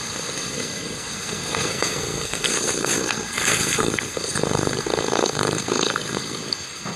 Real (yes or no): no